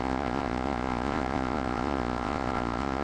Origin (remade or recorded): remade